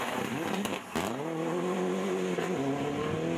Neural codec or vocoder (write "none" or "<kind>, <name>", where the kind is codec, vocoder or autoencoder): none